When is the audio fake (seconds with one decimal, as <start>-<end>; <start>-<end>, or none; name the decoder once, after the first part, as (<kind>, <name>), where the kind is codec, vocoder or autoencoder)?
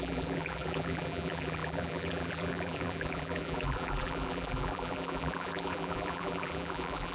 0.0-7.1 (vocoder, BigVGAN v2)